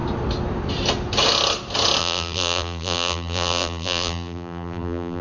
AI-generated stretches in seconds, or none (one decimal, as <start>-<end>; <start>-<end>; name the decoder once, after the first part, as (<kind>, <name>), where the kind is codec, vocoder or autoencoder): 2.0-5.2 (vocoder, BigVGAN v2)